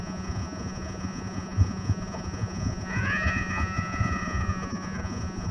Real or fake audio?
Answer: fake